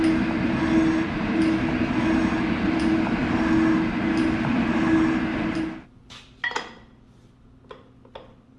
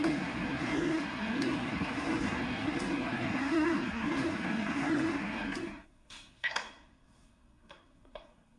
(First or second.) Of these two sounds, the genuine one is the first